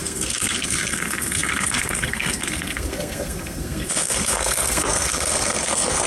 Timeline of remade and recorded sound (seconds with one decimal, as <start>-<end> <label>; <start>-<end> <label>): 0.0-6.1 remade